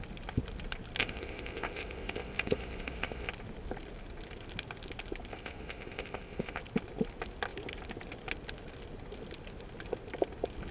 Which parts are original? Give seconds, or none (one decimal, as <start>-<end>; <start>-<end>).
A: 0.0-1.0; 3.3-5.3; 6.6-10.7